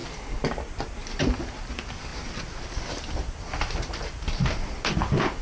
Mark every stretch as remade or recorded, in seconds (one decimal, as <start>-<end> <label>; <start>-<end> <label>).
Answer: 0.0-5.4 recorded